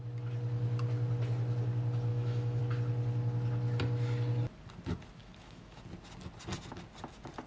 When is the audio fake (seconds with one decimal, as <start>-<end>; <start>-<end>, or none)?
2.1-2.6; 5.2-5.8